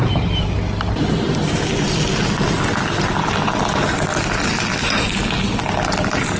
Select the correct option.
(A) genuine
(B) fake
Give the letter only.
A